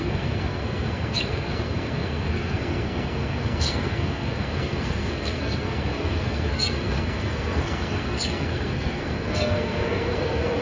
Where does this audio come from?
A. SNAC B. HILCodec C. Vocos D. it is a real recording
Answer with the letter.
A